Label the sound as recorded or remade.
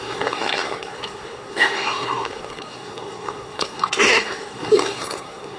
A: remade